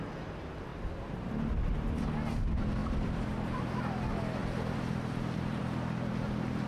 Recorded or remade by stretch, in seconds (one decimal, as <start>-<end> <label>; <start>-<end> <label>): 0.0-0.7 recorded; 0.7-1.3 remade; 1.3-2.8 recorded; 2.8-3.6 remade; 3.6-4.4 recorded; 4.4-5.6 remade; 5.6-6.7 recorded